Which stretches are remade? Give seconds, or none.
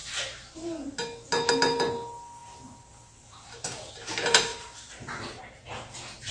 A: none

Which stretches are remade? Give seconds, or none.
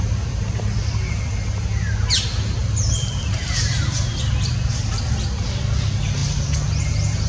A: 2.6-4.5 (vocoder, BigVGAN v2)